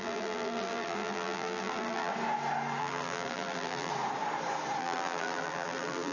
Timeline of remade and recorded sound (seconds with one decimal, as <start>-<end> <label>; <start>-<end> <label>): 0.0-2.1 remade; 2.1-2.8 recorded; 2.8-3.9 remade; 3.9-4.8 recorded; 4.8-6.1 remade